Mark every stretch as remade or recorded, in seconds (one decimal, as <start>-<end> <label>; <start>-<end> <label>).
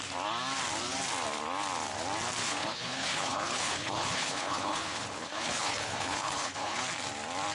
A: 0.0-2.4 recorded; 2.4-6.8 remade; 6.8-7.5 recorded